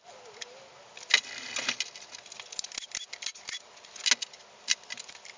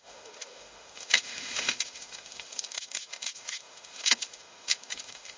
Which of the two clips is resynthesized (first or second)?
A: second